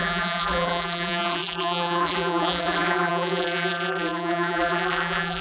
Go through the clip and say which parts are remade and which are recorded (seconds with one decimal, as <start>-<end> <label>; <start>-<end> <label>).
0.0-5.4 remade